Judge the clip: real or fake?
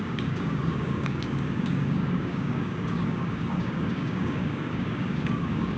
fake